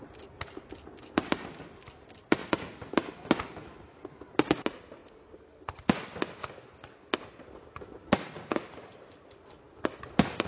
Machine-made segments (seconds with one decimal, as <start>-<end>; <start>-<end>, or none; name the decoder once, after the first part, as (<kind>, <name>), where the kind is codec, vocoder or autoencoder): none